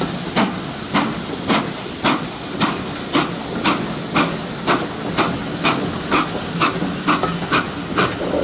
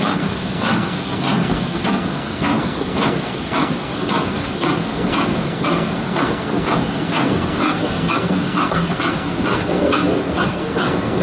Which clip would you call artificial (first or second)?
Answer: second